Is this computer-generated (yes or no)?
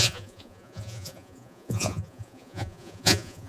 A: yes